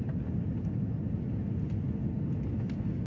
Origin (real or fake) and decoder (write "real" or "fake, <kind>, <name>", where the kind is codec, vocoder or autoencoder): real